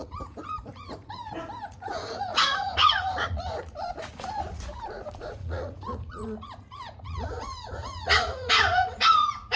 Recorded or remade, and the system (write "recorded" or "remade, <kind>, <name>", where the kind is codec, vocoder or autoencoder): remade, vocoder, Vocos